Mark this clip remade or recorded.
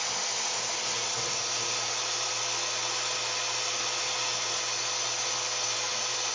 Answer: recorded